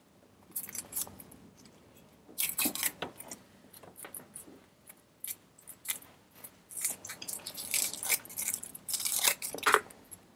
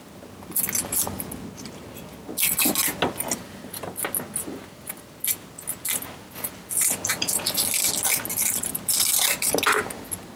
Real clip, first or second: second